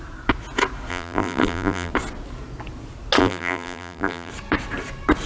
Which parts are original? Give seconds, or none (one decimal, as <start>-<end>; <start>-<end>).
0.0-0.9; 1.9-3.2; 4.3-5.3

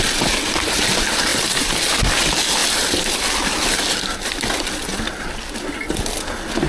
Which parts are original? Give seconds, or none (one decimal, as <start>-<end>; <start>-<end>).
0.0-6.7

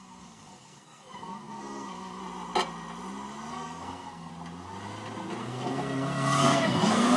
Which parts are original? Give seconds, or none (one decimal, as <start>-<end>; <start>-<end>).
2.2-3.5; 4.3-5.4

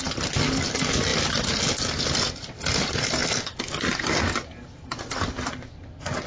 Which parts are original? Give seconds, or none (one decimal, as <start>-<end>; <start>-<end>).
0.0-6.3

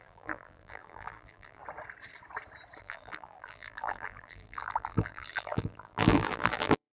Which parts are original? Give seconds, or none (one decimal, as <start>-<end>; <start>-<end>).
1.6-2.8

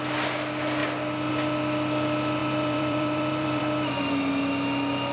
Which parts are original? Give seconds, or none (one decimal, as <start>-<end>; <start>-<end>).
0.0-2.4; 3.6-5.1

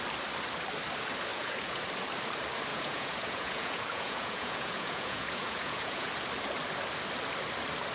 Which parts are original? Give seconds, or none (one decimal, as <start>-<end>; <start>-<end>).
0.0-1.3; 1.8-2.7; 6.1-7.9

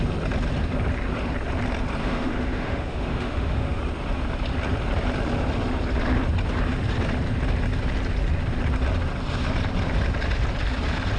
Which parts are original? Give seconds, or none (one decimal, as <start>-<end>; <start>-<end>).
0.0-2.0; 3.8-11.2